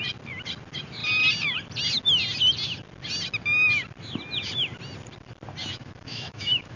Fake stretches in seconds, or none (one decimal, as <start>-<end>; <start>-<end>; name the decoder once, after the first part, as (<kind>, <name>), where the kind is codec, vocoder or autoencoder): 5.6-6.8 (autoencoder, DAC-VAE)